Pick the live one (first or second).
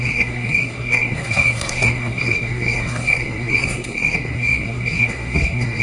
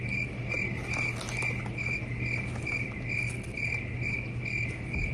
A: second